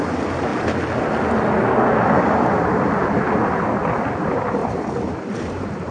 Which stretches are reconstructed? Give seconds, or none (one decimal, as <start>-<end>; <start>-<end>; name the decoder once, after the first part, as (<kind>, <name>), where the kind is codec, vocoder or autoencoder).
0.0-0.5 (vocoder, BigVGAN v2); 4.0-4.6; 5.2-5.9